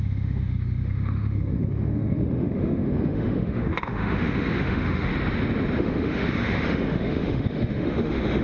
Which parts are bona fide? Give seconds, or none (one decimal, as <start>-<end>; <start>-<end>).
5.1-5.8